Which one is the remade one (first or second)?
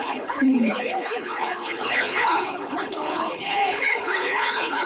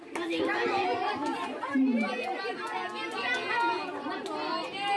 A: first